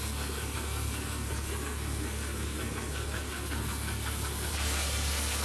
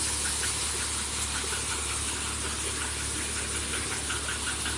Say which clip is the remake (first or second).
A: first